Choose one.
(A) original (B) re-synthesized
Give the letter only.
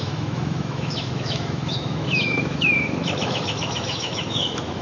B